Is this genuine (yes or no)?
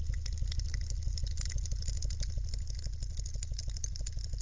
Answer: yes